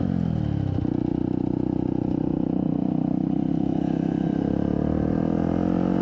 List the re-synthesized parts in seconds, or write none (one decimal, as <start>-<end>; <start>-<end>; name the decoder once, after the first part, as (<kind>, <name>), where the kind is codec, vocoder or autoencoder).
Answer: 1.1-3.5 (vocoder, BigVGAN v2)